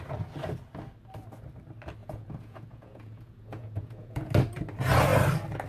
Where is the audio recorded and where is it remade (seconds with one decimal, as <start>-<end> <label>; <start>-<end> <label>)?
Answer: 0.0-2.0 recorded; 2.0-4.3 remade; 4.3-5.7 recorded